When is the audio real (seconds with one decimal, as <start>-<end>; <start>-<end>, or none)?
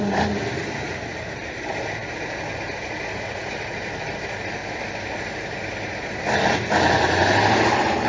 0.0-8.1